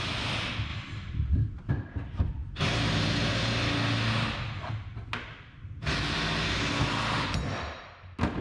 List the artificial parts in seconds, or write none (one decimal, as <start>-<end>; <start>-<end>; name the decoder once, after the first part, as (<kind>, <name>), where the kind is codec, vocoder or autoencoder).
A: none